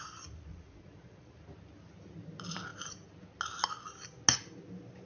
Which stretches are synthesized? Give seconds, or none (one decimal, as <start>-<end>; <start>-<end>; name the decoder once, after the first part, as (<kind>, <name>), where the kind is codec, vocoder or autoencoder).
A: 0.5-1.4 (vocoder, Vocos)